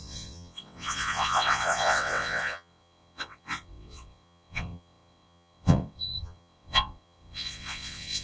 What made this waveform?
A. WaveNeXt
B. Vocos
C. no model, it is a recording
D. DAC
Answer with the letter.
A